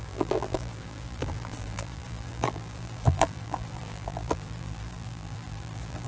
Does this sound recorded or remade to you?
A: remade